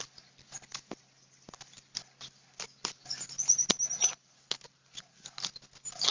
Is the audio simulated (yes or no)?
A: no